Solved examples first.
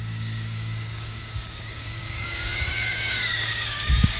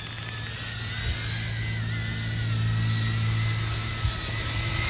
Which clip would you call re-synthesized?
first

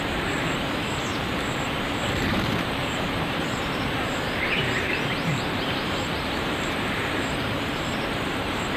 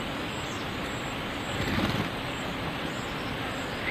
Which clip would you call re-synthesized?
first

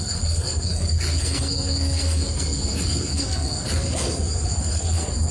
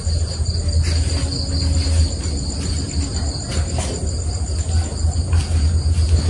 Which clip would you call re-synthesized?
first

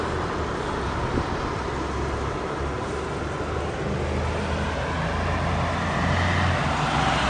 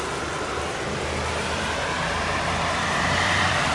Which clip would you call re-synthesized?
second